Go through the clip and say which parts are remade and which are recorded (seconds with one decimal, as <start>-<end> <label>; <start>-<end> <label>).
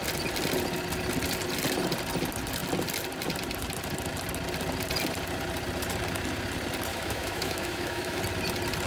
0.0-6.9 recorded; 6.9-8.2 remade; 8.2-8.9 recorded